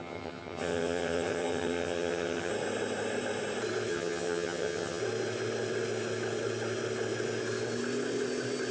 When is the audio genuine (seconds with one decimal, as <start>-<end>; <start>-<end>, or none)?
2.5-3.9; 5.0-8.7

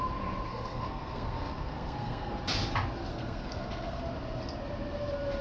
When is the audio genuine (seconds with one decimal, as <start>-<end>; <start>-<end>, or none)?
0.0-0.5; 2.4-3.1; 4.0-5.4

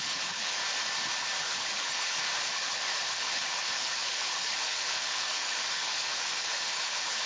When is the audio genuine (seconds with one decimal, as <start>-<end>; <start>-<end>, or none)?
0.6-1.4